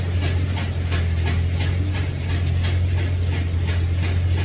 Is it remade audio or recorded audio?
recorded